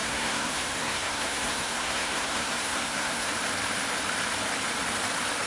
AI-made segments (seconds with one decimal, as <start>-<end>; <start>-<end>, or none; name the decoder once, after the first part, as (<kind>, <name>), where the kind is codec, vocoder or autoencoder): 0.0-3.3 (codec, SNAC)